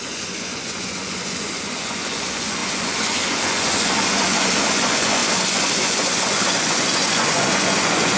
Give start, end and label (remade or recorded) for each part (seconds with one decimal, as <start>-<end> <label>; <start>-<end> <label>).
0.0-8.2 remade